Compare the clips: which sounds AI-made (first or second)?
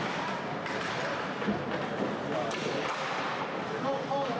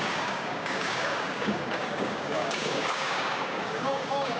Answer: second